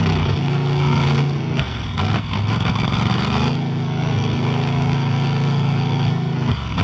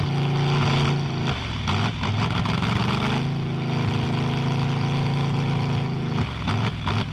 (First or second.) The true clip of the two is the second